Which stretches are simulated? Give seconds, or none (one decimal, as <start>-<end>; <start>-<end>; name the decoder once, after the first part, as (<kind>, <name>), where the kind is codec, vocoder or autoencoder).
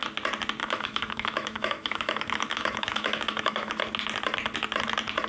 0.6-3.8 (autoencoder, DAC-VAE)